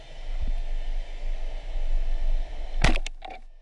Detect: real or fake real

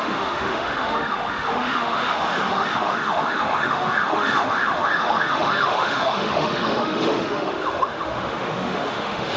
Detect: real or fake fake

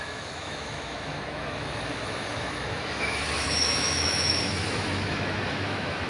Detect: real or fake fake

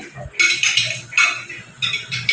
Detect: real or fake real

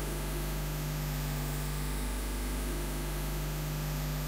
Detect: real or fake fake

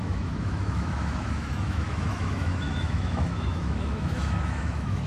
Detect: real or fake fake